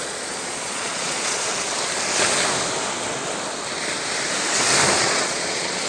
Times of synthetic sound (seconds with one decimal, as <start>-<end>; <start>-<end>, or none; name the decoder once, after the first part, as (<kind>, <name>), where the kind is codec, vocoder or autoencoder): 0.0-1.5 (vocoder, Vocos); 5.0-5.9